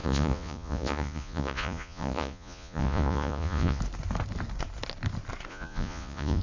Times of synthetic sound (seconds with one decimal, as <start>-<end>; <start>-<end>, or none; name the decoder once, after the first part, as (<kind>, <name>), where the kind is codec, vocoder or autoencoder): 0.0-3.8 (vocoder, Vocos); 5.5-6.4